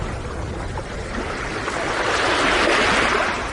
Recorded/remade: recorded